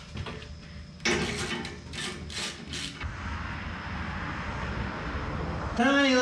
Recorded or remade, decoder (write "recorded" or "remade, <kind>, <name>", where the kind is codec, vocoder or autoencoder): recorded